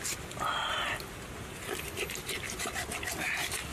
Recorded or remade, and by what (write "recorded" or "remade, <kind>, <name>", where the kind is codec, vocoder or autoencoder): recorded